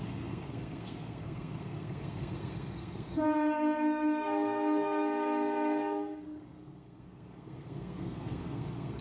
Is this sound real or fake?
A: fake